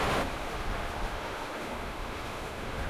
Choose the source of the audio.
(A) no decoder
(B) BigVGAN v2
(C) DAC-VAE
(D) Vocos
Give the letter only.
C